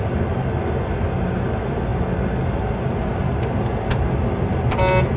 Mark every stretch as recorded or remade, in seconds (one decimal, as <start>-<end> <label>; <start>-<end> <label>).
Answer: 0.0-5.2 recorded